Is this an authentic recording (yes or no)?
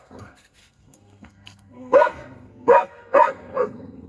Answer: no